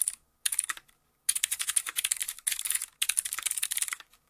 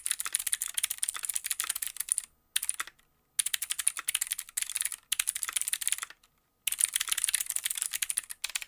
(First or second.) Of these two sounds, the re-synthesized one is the first